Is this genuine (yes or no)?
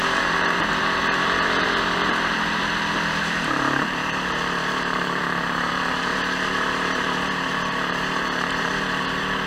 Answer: no